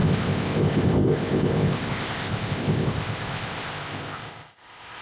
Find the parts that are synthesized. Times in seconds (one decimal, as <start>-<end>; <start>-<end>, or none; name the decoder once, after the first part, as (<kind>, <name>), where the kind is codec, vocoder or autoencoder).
0.0-5.0 (codec, ZipCodec)